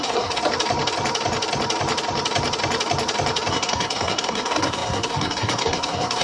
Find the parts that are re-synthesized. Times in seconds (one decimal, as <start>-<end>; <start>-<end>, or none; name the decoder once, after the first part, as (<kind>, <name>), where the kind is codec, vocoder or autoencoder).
0.0-0.4 (codec, SNAC); 3.5-6.2